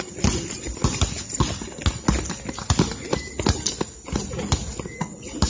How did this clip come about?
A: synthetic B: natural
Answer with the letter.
B